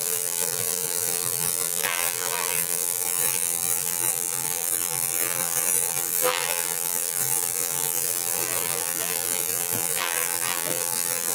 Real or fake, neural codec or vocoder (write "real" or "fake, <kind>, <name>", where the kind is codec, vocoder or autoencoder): fake, vocoder, BigVGAN v2